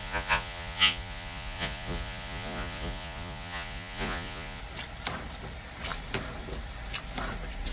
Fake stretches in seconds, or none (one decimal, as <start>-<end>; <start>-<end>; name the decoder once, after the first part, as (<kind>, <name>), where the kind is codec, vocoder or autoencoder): 0.0-4.6 (vocoder, Vocos)